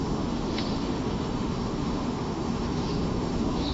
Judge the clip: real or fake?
fake